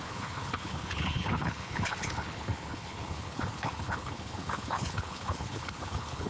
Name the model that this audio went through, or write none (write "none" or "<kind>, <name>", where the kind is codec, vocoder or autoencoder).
codec, HILCodec